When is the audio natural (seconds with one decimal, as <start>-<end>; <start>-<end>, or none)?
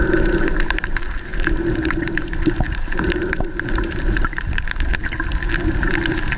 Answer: 4.9-5.8